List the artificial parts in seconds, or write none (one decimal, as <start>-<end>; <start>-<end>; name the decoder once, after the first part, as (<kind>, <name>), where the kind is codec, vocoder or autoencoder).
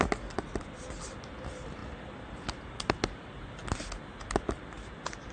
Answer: none